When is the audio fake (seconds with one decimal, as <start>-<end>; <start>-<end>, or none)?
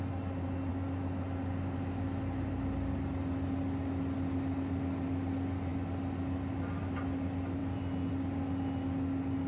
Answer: none